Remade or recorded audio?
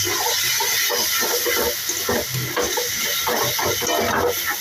recorded